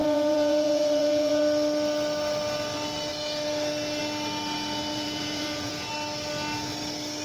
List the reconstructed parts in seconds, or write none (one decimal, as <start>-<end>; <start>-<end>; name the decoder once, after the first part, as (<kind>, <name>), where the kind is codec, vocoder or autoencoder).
0.0-1.4 (vocoder, Vocos); 4.9-5.7